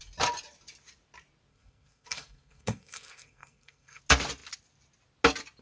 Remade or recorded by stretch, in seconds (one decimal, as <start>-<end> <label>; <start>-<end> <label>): 0.0-1.5 recorded; 1.5-4.0 remade; 4.0-5.6 recorded